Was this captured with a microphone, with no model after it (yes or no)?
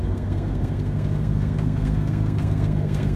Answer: no